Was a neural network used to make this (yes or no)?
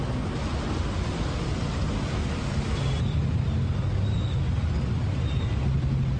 no